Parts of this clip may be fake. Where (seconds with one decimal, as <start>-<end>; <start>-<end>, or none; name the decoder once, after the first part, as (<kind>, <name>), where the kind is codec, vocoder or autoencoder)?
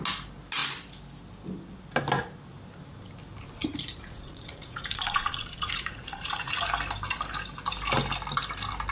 3.6-6.7 (vocoder, Vocos)